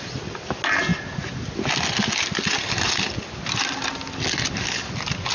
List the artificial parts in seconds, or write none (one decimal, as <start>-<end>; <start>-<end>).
none